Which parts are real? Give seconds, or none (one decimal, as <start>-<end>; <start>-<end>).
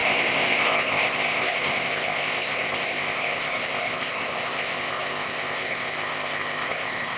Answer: none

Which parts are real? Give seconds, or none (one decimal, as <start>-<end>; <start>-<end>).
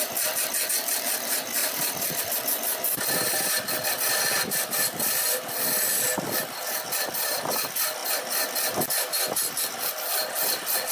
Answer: 0.0-1.6; 2.2-10.9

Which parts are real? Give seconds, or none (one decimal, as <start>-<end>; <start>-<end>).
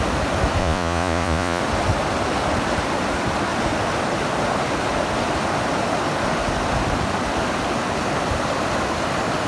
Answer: 0.0-0.6; 1.6-9.5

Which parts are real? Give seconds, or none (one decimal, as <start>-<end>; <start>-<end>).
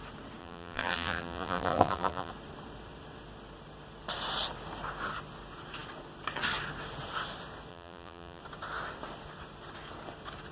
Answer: 0.0-0.4; 2.3-7.7; 8.4-10.5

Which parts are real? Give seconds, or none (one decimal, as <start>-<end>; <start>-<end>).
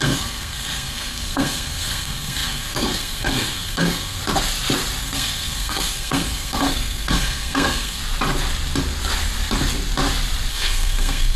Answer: 4.2-5.0; 8.0-10.5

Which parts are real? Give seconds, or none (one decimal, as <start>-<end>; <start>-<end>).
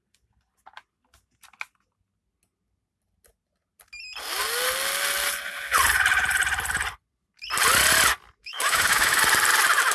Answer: 0.0-8.4; 9.2-9.9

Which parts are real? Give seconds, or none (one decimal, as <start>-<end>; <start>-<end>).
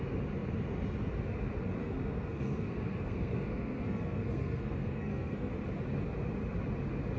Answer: 0.0-1.8; 5.5-7.2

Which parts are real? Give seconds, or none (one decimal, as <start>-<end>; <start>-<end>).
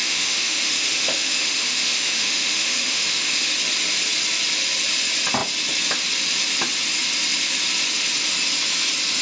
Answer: 3.5-9.2